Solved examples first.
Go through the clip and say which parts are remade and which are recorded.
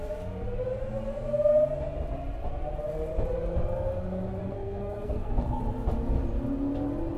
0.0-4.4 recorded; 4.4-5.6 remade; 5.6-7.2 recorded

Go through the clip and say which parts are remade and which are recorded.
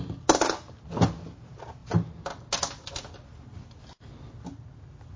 0.0-5.2 recorded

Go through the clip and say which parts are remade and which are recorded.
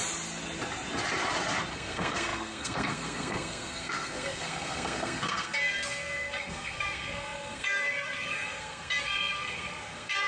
0.0-1.7 recorded; 1.7-10.3 remade